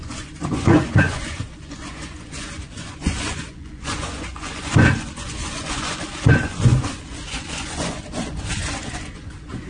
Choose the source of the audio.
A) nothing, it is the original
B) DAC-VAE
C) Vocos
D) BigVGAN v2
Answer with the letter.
C